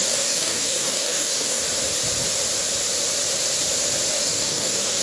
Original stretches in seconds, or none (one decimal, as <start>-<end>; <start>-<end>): 1.6-4.1